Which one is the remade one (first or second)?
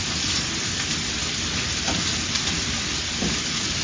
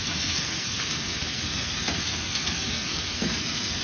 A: second